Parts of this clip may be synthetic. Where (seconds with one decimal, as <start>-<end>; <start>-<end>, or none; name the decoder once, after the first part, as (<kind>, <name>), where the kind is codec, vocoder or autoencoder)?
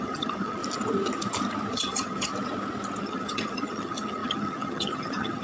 0.0-0.6 (vocoder, HiFi-GAN); 1.7-2.3; 3.0-5.4